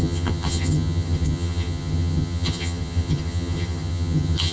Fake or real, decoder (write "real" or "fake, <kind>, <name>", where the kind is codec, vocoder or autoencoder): fake, vocoder, HiFi-GAN